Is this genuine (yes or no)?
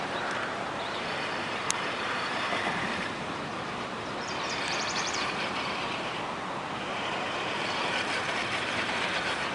no